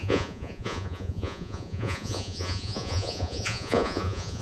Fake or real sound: fake